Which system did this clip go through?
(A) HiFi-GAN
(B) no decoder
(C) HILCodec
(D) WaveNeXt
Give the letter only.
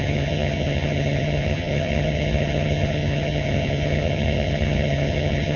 A